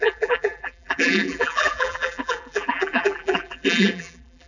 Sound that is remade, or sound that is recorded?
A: remade